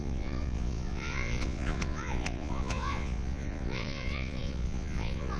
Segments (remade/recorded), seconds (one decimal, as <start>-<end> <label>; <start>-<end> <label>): 0.0-5.4 remade